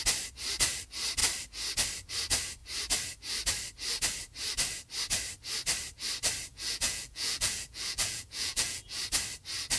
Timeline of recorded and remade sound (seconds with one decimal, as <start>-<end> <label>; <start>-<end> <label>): 0.0-6.5 recorded; 6.5-9.0 remade; 9.0-9.8 recorded